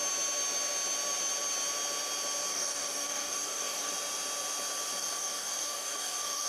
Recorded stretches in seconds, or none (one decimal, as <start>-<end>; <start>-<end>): 0.0-2.5; 3.9-5.0